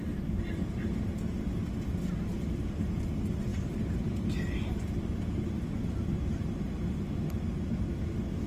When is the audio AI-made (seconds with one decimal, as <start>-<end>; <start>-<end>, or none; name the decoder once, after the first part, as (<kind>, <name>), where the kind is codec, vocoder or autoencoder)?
3.5-6.6 (vocoder, BigVGAN v2)